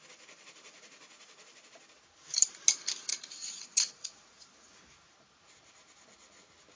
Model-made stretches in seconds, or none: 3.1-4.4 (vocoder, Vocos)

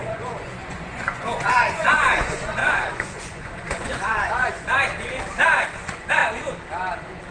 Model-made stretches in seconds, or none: 0.0-4.9 (vocoder, Vocos); 5.5-6.2

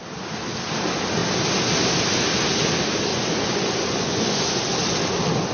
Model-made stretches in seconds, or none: 3.1-4.7 (vocoder, Vocos)

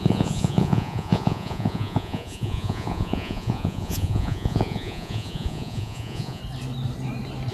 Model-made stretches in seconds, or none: 0.0-6.4 (vocoder, Vocos)

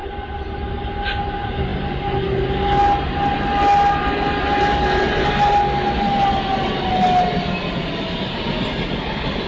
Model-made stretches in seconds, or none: none

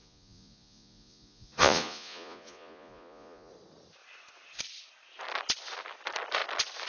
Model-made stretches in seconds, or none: 0.0-3.5 (vocoder, Vocos)

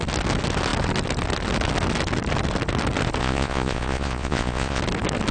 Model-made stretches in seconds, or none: 3.2-4.8 (vocoder, Vocos)